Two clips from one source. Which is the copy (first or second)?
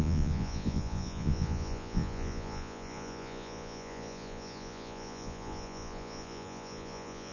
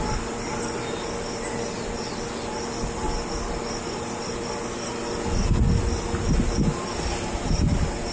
first